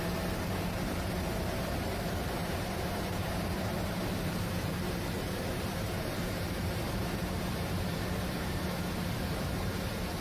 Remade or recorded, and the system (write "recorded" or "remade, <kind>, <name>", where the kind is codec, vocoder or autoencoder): remade, vocoder, BigVGAN v2